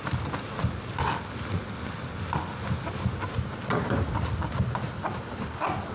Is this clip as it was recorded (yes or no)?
yes